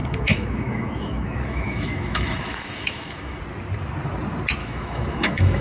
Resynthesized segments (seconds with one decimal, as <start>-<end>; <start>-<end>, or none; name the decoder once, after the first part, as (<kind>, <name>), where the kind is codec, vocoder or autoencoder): 0.0-3.4 (autoencoder, DAC-VAE); 4.6-5.6